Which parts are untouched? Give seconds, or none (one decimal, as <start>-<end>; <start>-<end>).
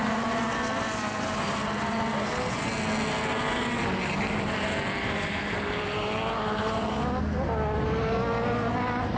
0.0-5.0; 6.9-9.2